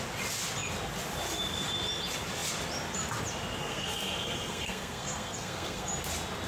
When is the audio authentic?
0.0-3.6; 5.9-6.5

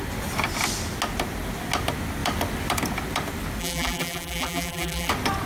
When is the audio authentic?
0.0-3.6; 5.1-5.5

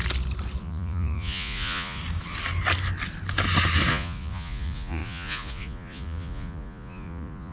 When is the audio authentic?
0.0-0.6; 2.0-3.9

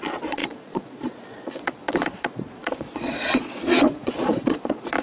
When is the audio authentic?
none

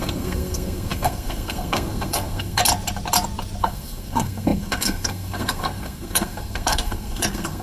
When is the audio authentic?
2.6-3.6

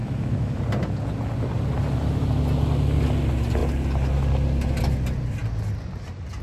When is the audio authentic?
0.6-6.4

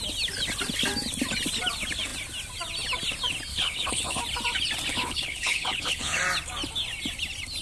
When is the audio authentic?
0.0-3.5; 4.2-4.9; 6.2-7.6

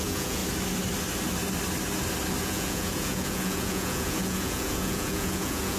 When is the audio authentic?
0.4-2.4